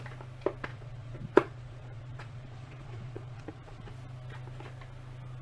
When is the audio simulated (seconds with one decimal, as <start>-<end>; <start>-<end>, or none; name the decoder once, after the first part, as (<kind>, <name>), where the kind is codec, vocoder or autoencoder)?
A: 0.7-3.9 (vocoder, Vocos)